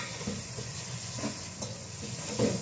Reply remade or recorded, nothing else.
remade